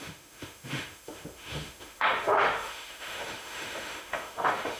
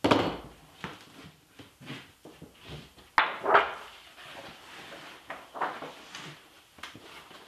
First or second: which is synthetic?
first